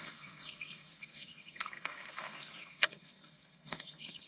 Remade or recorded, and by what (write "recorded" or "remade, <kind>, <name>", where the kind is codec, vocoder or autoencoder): remade, codec, SNAC